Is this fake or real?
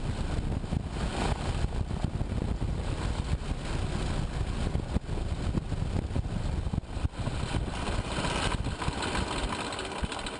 real